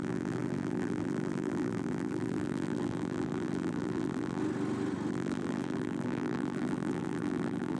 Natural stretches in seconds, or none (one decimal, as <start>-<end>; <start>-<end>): 4.4-5.1